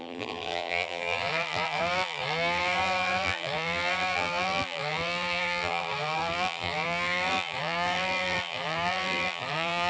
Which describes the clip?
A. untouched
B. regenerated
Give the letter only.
B